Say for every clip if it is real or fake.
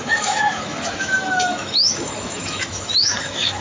fake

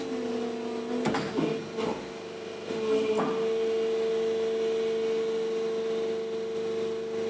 real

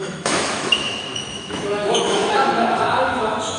fake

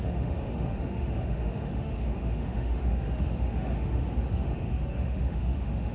fake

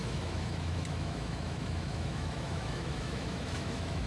fake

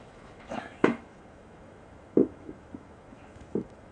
fake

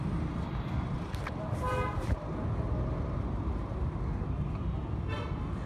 real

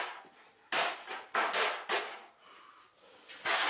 real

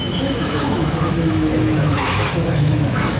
fake